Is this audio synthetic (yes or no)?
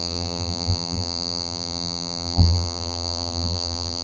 yes